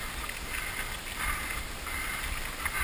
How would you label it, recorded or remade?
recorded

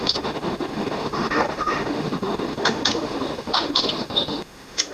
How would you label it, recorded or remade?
remade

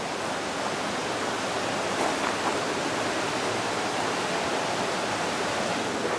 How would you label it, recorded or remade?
recorded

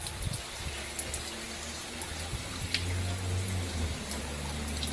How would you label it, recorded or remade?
recorded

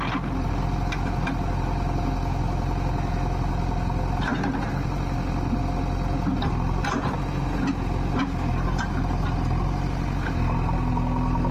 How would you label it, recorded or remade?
recorded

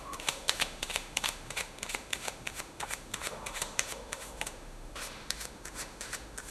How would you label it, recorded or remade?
remade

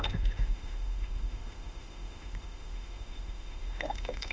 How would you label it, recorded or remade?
remade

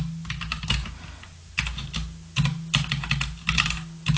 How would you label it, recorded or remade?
recorded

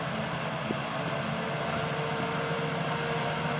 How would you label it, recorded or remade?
recorded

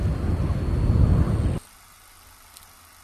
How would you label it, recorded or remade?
recorded